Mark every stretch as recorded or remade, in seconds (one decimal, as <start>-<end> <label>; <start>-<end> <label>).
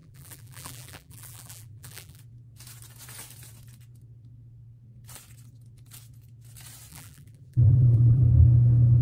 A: 0.0-2.2 remade; 2.2-6.9 recorded; 6.9-8.2 remade; 8.2-9.0 recorded